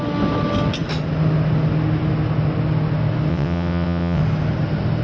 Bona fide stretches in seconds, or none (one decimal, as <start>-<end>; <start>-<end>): 0.0-3.3; 4.2-5.0